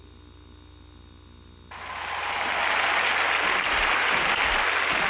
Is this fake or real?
real